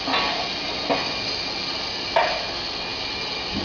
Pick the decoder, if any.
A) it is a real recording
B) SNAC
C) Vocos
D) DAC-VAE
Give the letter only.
A